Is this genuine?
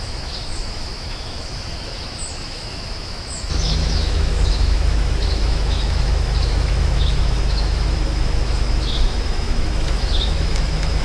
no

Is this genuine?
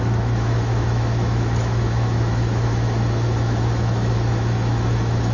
no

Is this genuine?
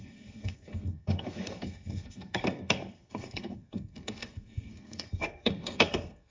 no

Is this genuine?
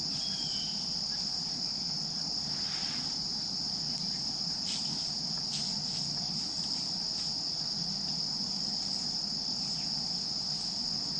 yes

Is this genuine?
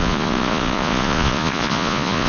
no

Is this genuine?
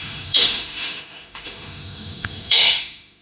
no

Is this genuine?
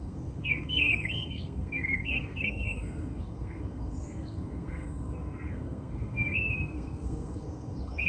no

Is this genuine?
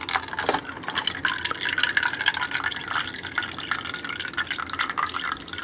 yes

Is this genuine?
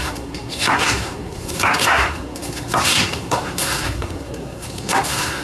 no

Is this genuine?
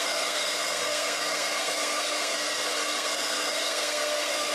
no